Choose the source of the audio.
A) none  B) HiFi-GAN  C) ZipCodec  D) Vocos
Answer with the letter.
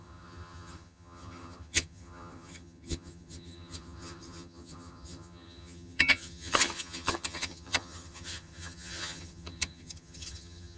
B